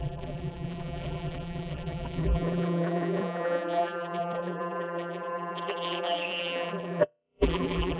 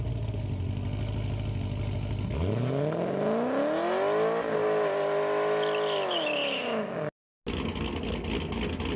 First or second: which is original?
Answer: second